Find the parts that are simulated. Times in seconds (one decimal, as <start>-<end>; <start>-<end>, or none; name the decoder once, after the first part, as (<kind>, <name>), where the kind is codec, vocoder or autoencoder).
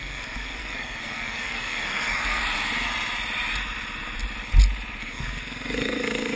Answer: 0.0-2.4 (codec, SNAC); 5.0-6.4